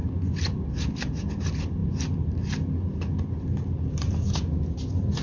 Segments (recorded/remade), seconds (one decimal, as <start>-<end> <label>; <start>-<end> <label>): 0.0-5.2 recorded